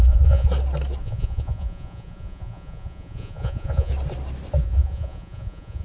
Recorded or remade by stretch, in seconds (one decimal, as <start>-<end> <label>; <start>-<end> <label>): 0.0-0.5 remade; 0.5-1.0 recorded; 1.0-3.9 remade; 3.9-4.6 recorded; 4.6-5.8 remade